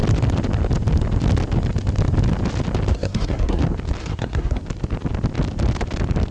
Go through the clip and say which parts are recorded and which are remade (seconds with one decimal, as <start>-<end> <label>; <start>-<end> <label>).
0.0-2.9 recorded; 2.9-3.6 remade; 3.6-4.0 recorded; 4.0-4.6 remade; 4.6-6.3 recorded